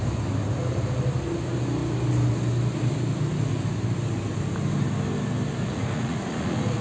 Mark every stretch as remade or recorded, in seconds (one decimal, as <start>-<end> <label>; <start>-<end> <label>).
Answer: 0.0-5.6 recorded; 5.6-6.8 remade